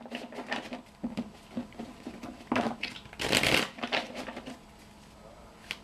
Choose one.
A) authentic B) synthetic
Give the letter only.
A